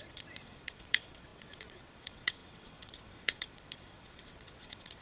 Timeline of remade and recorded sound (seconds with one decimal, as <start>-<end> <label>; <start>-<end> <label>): 0.0-5.0 remade